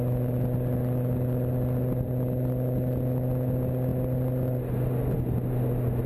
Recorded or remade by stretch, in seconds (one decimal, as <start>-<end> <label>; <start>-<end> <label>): 0.0-6.1 recorded